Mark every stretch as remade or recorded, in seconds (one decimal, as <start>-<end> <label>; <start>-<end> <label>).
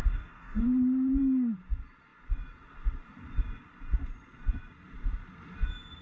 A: 0.0-0.6 remade; 0.6-6.0 recorded